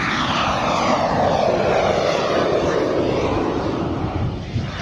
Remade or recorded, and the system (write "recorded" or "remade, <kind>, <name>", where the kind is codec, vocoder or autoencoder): recorded